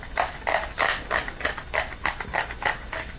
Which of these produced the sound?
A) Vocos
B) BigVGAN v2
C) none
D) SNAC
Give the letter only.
C